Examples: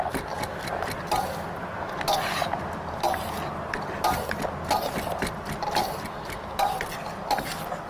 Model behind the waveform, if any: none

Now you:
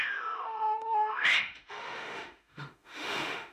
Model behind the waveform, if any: autoencoder, DAC-VAE